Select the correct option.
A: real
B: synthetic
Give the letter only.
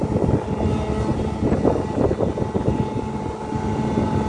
A